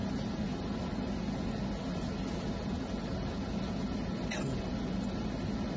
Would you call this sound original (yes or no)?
yes